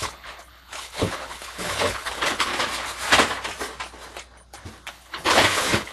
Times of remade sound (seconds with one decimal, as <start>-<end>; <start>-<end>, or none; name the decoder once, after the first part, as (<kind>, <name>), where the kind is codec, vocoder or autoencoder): 0.0-2.5 (codec, HILCodec); 4.9-5.9